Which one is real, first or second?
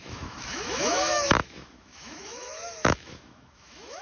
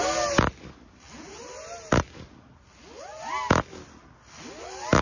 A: second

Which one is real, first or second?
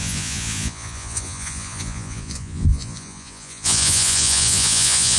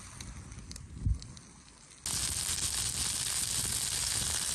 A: second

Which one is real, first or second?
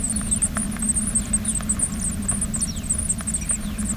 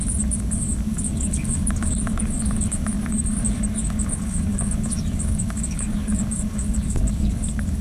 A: first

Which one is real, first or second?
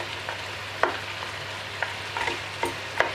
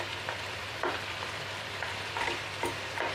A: first